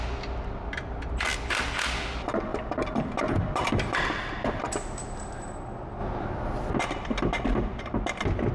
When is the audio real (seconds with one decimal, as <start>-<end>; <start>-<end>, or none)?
0.0-2.5; 3.7-6.0; 6.8-8.5